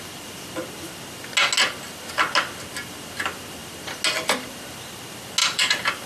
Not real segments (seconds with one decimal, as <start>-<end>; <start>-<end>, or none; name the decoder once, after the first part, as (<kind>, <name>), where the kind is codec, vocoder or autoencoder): 5.4-6.1 (vocoder, BigVGAN v2)